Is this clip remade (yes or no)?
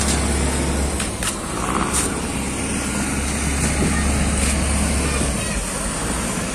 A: no